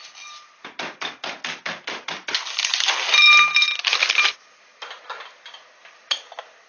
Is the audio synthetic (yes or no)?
no